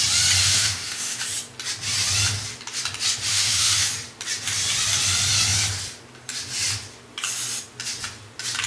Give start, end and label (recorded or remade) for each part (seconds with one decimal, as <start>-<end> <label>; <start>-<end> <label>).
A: 0.0-0.4 recorded; 0.4-1.2 remade; 1.2-3.3 recorded; 3.3-3.9 remade; 3.9-8.7 recorded